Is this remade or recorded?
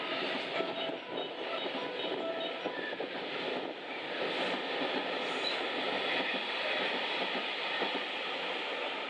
recorded